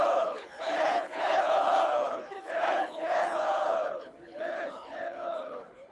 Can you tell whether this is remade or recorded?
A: remade